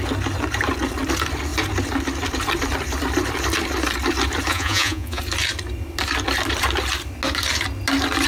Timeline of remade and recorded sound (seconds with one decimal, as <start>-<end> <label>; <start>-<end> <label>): 0.0-4.5 recorded; 4.5-5.2 remade; 5.2-8.3 recorded